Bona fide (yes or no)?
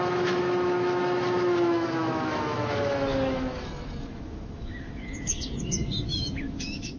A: no